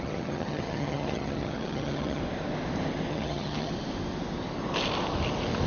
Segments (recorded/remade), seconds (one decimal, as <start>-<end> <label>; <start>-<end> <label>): 0.0-2.2 remade; 2.2-3.1 recorded; 3.1-3.7 remade; 3.7-5.7 recorded